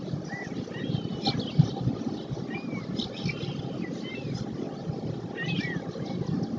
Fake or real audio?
real